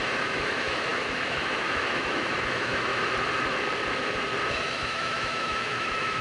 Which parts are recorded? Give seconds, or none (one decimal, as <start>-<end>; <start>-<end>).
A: 2.9-4.5